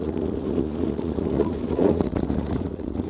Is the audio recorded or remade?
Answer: remade